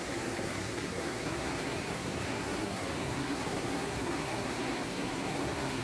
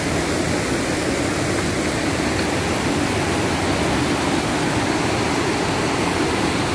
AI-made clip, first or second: first